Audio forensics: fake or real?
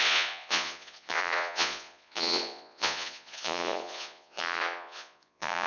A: fake